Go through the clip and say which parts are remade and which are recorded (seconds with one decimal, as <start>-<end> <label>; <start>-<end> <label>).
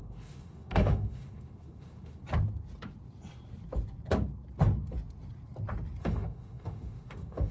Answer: 0.0-2.2 remade; 2.2-6.0 recorded; 6.0-7.5 remade